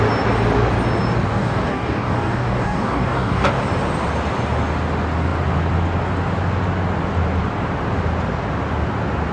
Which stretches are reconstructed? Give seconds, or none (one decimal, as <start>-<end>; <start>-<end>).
1.3-3.6